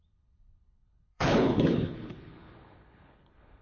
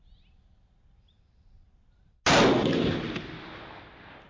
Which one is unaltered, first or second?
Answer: second